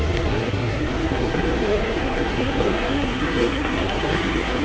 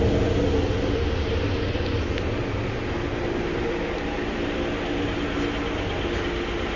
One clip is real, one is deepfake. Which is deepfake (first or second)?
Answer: first